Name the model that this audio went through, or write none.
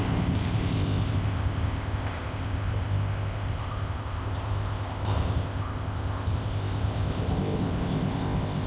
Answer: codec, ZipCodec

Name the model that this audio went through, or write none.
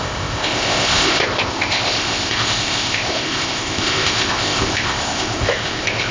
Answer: codec, ZipCodec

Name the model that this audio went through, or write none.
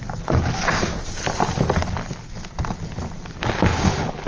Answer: none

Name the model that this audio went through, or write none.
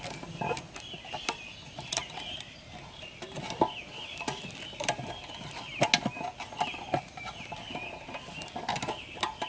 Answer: none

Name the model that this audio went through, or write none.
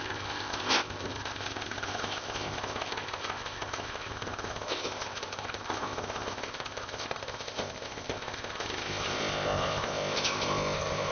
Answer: codec, ZipCodec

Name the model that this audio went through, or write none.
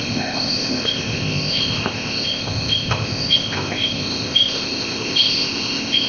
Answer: codec, ZipCodec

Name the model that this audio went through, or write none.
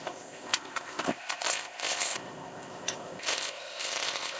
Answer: codec, ZipCodec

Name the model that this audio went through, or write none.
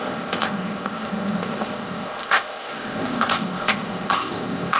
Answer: codec, ZipCodec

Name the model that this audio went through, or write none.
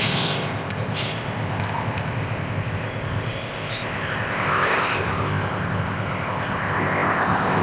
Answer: codec, ZipCodec